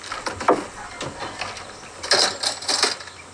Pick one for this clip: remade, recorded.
recorded